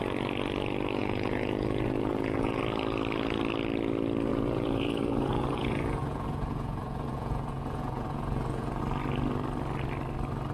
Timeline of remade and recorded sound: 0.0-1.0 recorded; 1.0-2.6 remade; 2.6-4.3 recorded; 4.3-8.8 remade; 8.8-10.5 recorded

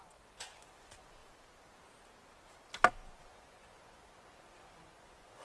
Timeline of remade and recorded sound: 0.0-1.2 remade; 1.2-2.9 recorded; 2.9-5.4 remade

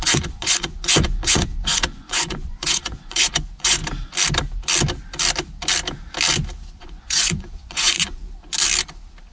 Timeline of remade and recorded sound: 0.0-3.8 remade; 3.8-6.7 recorded; 6.7-8.2 remade; 8.2-9.3 recorded

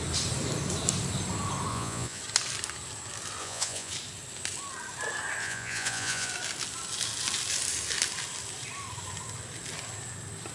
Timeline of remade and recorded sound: 0.0-1.7 recorded; 1.7-2.2 remade; 2.2-3.4 recorded; 3.4-3.9 remade; 3.9-5.4 recorded; 5.4-6.3 remade; 6.3-10.5 recorded

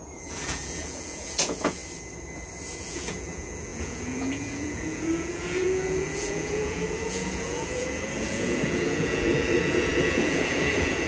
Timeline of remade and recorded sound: 0.0-1.8 remade; 1.8-2.8 recorded; 2.8-11.1 remade

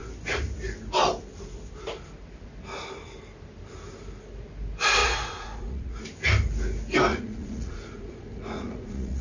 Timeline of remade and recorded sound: 0.0-5.0 recorded; 5.0-6.0 remade; 6.0-7.1 recorded; 7.1-9.2 remade

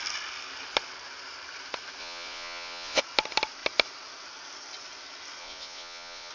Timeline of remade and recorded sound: 0.0-2.0 recorded; 2.0-3.0 remade; 3.0-5.4 recorded; 5.4-6.3 remade